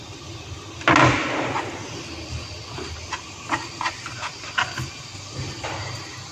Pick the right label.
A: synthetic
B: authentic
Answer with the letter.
B